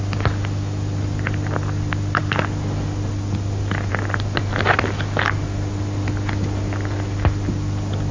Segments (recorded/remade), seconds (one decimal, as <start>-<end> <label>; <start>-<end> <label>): 0.0-8.1 recorded